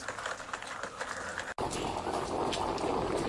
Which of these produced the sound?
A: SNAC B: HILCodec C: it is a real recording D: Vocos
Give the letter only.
C